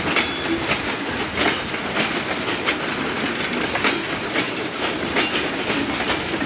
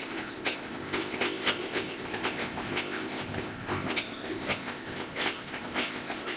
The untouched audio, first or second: first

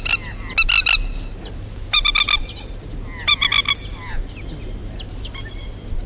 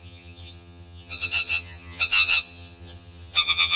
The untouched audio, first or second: first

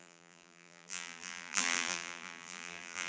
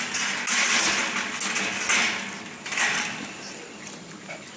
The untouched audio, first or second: second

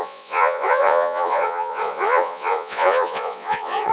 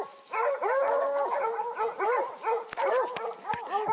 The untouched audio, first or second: second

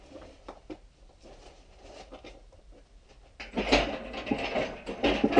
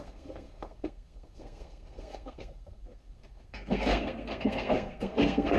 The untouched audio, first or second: first